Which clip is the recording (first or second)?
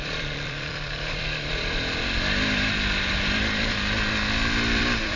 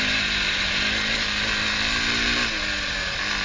second